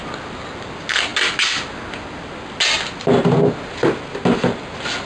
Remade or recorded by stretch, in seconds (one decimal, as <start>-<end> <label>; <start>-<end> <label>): 0.0-5.1 recorded